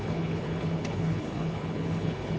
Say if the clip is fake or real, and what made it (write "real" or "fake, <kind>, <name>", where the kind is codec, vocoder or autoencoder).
fake, codec, HILCodec